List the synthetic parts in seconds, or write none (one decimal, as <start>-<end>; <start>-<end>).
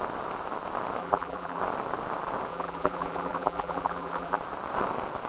1.0-1.6; 2.5-4.4